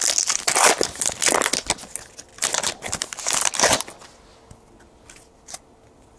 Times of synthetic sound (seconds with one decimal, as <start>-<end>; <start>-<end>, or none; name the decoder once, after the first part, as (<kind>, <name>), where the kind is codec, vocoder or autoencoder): none